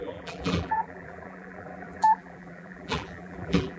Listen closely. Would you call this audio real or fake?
fake